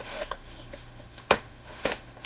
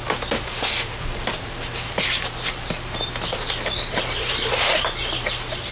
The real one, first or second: second